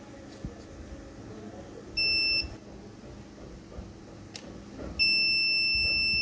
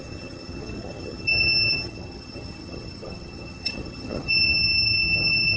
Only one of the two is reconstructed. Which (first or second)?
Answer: second